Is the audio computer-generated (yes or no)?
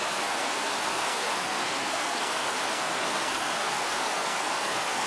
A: yes